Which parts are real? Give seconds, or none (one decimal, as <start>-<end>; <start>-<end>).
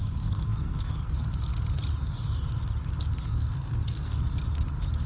1.5-3.2; 4.1-5.1